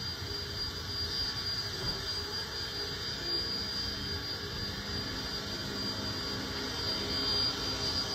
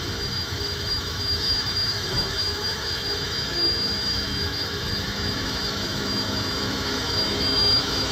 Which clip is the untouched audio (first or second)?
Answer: first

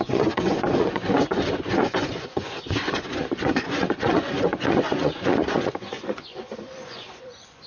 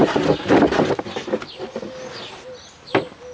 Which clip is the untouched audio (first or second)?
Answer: second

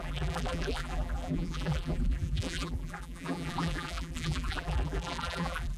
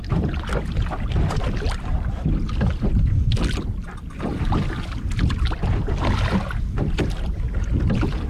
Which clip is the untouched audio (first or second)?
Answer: second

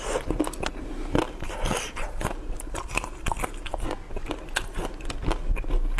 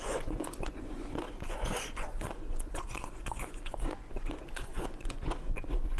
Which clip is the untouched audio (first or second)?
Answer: first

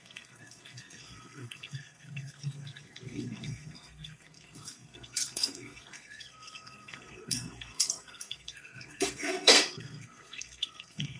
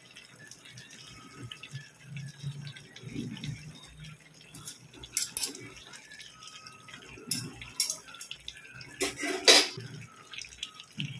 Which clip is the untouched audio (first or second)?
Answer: second